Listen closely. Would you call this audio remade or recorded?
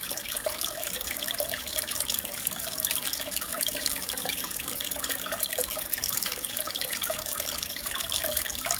remade